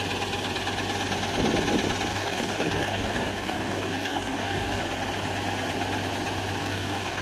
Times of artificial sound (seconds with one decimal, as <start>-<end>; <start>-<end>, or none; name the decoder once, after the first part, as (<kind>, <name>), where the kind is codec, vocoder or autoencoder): 2.1-4.8 (codec, DAC); 6.6-7.2